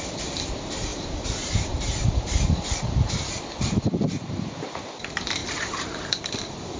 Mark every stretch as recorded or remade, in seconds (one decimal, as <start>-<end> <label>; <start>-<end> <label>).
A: 0.0-6.8 remade